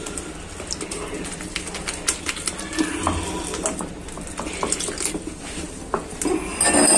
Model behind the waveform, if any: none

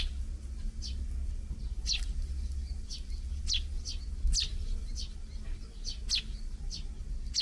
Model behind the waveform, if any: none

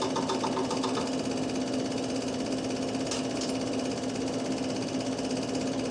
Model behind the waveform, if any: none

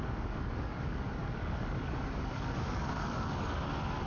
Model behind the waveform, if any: codec, DAC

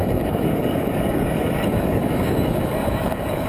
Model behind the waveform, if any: codec, DAC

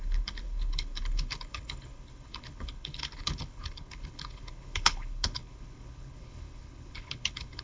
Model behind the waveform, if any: codec, HILCodec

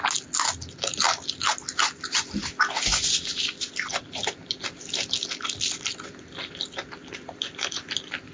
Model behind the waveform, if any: none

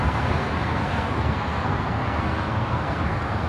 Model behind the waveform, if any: codec, SNAC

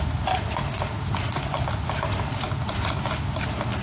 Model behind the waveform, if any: none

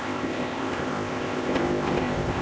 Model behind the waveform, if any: codec, ZipCodec